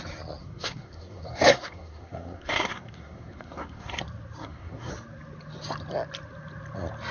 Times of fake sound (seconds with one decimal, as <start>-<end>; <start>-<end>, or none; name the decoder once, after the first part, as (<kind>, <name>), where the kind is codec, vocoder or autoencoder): 0.4-4.0 (codec, SNAC); 4.4-4.9